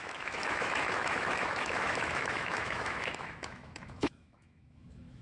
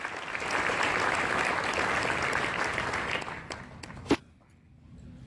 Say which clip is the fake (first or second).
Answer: first